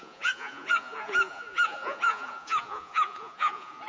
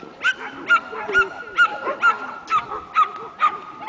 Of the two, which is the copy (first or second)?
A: first